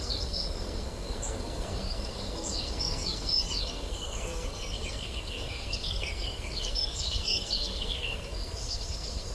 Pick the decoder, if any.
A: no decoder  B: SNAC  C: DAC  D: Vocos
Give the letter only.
B